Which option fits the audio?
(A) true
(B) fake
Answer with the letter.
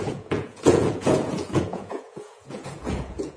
B